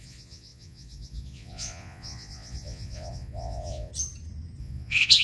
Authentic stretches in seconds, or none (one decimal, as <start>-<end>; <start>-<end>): 3.9-4.6